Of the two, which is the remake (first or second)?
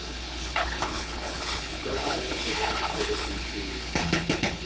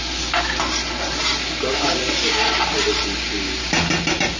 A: first